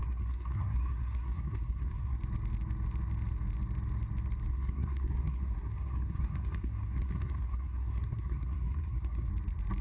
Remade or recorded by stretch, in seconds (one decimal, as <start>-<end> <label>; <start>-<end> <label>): 0.0-2.2 remade; 2.2-4.5 recorded; 4.5-9.3 remade; 9.3-9.8 recorded